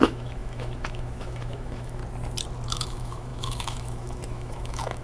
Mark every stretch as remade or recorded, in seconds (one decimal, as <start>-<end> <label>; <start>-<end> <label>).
0.0-2.0 remade; 2.0-2.7 recorded; 2.7-5.0 remade